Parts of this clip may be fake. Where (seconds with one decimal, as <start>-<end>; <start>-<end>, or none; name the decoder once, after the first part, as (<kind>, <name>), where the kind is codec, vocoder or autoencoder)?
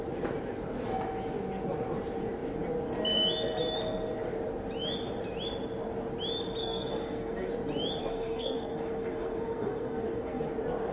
6.6-7.5 (codec, SNAC); 8.0-10.4